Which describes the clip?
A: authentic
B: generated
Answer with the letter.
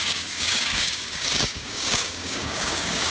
B